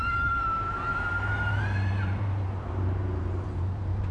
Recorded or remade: remade